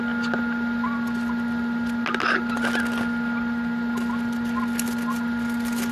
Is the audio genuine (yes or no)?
yes